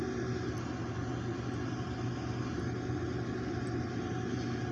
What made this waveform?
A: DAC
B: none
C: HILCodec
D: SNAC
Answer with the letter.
B